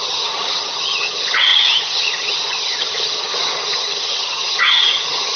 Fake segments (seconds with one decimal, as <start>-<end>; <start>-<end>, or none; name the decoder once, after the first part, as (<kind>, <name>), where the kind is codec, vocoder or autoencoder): 0.0-5.4 (vocoder, HiFi-GAN)

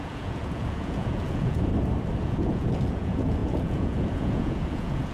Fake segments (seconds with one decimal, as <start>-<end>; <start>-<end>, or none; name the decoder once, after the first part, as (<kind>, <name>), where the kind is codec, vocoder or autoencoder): 0.0-1.7 (vocoder, Vocos); 2.2-5.1

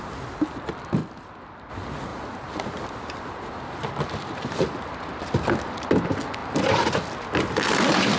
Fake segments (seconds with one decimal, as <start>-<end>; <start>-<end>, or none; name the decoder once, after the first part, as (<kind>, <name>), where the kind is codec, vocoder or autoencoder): 2.1-5.2 (vocoder, BigVGAN v2); 6.4-8.2